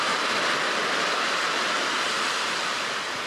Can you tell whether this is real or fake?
real